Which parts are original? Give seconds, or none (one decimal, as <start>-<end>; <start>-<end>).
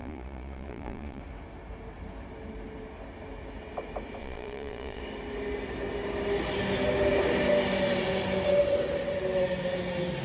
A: 1.2-4.2; 5.0-10.2